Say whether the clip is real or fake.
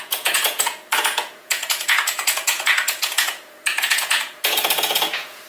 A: fake